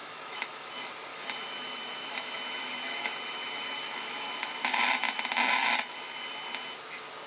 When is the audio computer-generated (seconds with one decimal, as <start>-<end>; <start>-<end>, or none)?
0.0-0.7; 1.1-4.6